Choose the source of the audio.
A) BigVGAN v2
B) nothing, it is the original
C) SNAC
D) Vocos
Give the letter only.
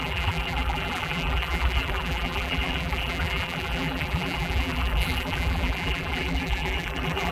A